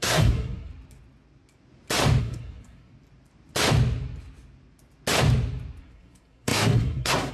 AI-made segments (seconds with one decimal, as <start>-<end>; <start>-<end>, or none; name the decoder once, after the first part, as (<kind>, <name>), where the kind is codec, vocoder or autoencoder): 0.0-0.7 (codec, SNAC); 2.2-2.9; 5.8-7.3